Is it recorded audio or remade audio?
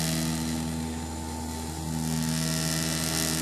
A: recorded